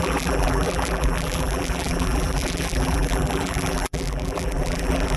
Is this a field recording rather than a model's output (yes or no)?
no